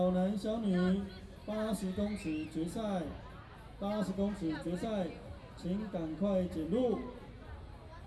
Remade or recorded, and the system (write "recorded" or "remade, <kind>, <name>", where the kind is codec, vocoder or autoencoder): recorded